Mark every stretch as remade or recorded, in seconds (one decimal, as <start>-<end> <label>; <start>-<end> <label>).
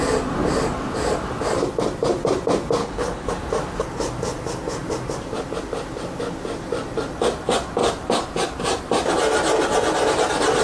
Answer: 0.0-2.8 recorded; 2.8-3.3 remade; 3.3-10.6 recorded